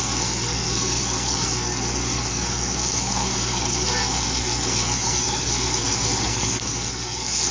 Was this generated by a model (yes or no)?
yes